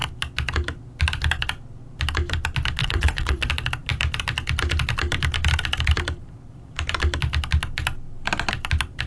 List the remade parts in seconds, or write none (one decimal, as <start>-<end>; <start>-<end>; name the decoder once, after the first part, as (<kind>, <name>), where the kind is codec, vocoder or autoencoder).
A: 2.8-3.5 (vocoder, WaveNeXt)

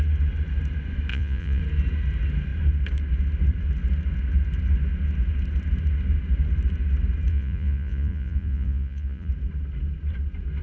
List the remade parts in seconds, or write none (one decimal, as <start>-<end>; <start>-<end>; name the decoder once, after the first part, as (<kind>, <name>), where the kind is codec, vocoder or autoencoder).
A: 1.1-1.6 (vocoder, Vocos); 7.3-9.3

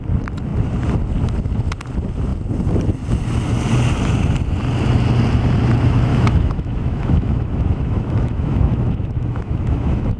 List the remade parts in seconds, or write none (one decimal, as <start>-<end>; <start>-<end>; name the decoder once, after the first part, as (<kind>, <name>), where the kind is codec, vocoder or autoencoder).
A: 6.1-10.2 (autoencoder, DAC-VAE)

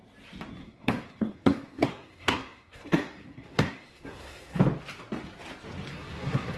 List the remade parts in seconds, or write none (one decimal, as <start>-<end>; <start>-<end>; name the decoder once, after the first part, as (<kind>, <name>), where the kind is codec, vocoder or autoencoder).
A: 0.6-4.6 (codec, SNAC); 5.9-6.6

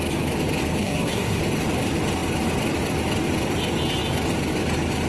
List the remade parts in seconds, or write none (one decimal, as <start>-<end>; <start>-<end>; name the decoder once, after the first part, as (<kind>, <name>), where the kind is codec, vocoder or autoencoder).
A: 0.8-1.4 (codec, SNAC)

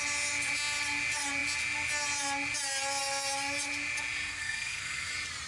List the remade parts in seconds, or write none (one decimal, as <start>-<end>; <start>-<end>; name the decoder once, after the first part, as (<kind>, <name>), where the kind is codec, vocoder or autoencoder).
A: 4.3-5.1 (codec, SNAC)

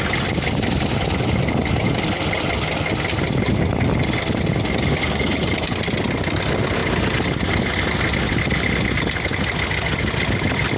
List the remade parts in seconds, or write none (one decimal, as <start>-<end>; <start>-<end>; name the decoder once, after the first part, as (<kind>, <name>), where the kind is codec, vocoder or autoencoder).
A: none

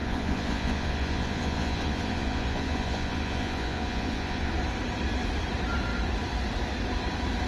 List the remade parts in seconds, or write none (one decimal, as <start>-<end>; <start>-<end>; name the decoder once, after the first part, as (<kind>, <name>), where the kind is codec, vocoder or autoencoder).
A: 0.0-4.5 (vocoder, Vocos)